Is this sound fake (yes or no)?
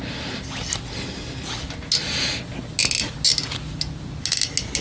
no